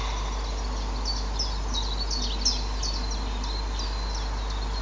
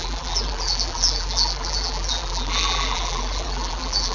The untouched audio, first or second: first